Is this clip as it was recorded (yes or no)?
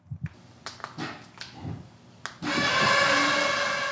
yes